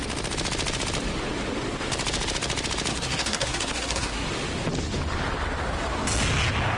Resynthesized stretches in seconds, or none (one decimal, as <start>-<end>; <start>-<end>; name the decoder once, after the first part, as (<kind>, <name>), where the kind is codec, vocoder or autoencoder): 2.9-4.3 (codec, SNAC)